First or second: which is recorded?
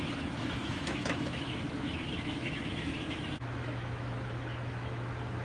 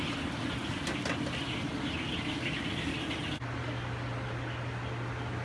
second